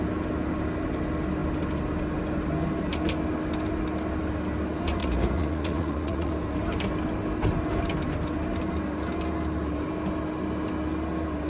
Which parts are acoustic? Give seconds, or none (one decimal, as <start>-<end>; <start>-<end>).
0.0-5.0; 6.3-11.5